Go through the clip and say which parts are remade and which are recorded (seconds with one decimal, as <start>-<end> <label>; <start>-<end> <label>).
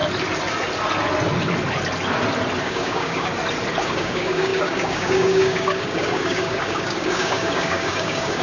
0.0-2.6 recorded; 2.6-3.3 remade; 3.3-3.8 recorded; 3.8-8.4 remade